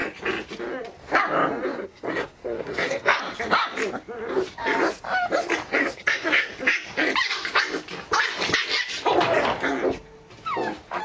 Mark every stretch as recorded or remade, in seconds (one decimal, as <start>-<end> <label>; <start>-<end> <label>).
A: 0.0-1.7 recorded; 1.7-3.2 remade; 3.2-5.8 recorded; 5.8-6.5 remade; 6.5-11.0 recorded